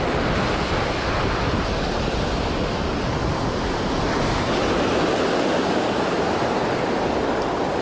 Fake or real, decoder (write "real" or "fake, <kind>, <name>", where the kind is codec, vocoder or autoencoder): real